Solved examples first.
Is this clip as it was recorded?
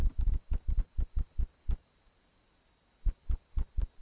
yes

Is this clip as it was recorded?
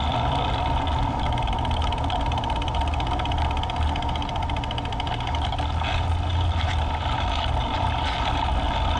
yes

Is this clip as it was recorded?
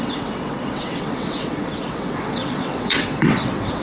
no